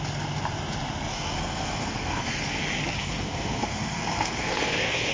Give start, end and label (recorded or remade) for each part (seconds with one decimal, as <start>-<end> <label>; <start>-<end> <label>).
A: 0.0-1.1 recorded; 1.1-2.4 remade; 2.4-3.0 recorded; 3.0-5.1 remade